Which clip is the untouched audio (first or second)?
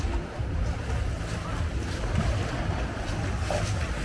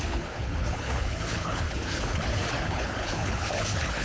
first